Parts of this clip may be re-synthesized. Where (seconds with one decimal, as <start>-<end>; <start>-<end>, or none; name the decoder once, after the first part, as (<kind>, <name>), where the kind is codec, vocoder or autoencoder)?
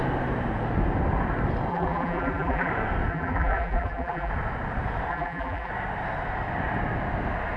1.7-2.7 (vocoder, BigVGAN v2); 3.1-4.3; 5.1-5.7